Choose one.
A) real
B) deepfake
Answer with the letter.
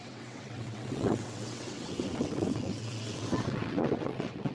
B